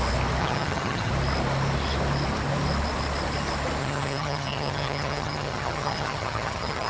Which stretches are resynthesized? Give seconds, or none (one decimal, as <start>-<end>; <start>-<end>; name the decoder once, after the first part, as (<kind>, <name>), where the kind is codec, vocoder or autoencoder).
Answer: 0.4-1.1 (vocoder, HiFi-GAN); 3.8-6.9